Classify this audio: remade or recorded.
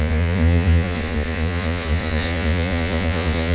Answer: remade